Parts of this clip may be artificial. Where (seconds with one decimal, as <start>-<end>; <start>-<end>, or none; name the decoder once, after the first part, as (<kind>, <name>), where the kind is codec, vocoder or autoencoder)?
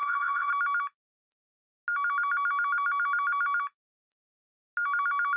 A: 0.0-0.5 (vocoder, Vocos)